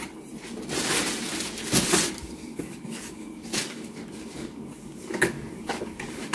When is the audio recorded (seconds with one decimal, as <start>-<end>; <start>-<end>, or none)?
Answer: 0.0-2.2